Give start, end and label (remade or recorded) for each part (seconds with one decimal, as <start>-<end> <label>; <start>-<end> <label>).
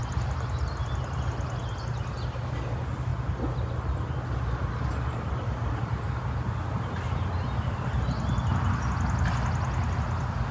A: 0.0-10.5 recorded